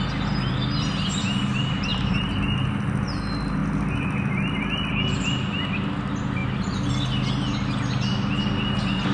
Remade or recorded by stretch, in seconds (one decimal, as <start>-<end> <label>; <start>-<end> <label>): 0.0-1.9 recorded; 1.9-2.4 remade; 2.4-6.4 recorded; 6.4-6.9 remade; 6.9-9.1 recorded